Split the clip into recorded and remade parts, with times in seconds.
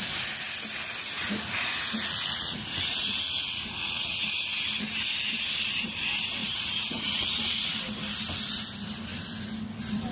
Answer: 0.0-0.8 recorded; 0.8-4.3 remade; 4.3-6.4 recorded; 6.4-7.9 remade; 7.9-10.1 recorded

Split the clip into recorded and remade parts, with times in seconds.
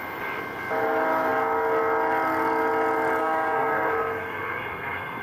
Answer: 0.0-3.2 recorded; 3.2-5.2 remade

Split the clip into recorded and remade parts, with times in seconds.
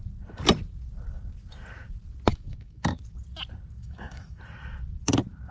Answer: 0.0-2.3 recorded; 2.3-3.0 remade; 3.0-3.8 recorded; 3.8-4.4 remade; 4.4-5.5 recorded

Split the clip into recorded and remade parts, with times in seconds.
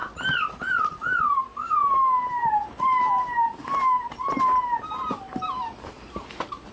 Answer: 0.0-1.5 recorded; 1.5-4.9 remade; 4.9-6.7 recorded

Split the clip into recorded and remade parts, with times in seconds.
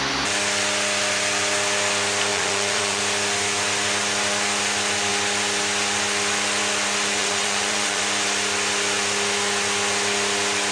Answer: 0.0-2.3 recorded; 2.3-3.0 remade; 3.0-7.2 recorded; 7.2-8.0 remade; 8.0-10.7 recorded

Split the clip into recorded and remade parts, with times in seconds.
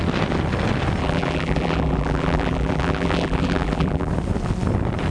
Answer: 0.0-1.0 recorded; 1.0-4.1 remade; 4.1-5.1 recorded